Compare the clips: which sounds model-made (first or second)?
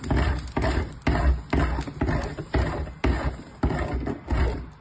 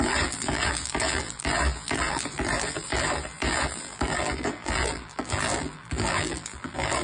second